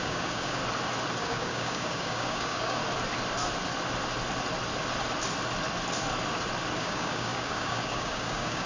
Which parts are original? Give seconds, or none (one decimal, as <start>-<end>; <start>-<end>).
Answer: 0.6-1.2; 2.8-6.8